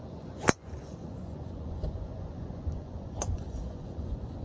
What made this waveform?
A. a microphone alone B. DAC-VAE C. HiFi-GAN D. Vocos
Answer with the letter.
D